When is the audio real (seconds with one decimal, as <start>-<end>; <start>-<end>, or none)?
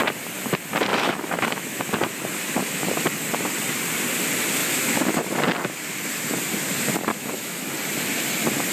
0.0-0.9; 1.8-4.6; 5.2-7.1; 7.7-8.7